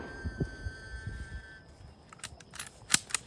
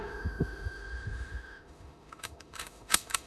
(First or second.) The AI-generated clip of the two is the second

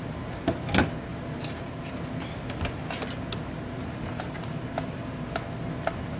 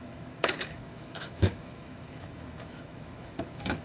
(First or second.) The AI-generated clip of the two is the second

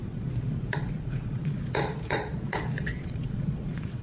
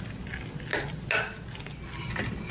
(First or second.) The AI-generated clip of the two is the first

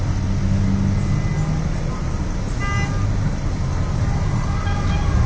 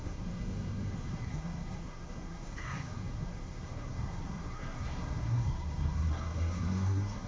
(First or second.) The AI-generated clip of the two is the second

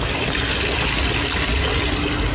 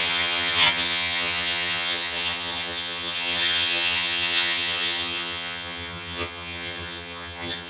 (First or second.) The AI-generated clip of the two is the second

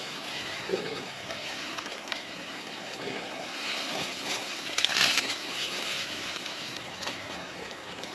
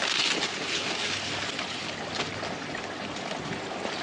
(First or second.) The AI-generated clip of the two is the first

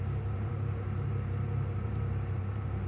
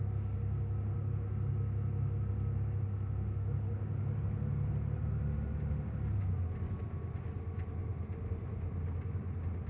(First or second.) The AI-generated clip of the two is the first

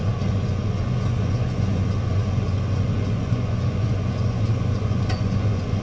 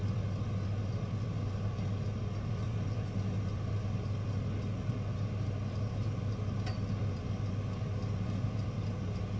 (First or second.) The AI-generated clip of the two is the first